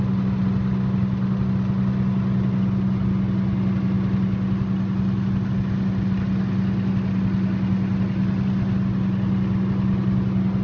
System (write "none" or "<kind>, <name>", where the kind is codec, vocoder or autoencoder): none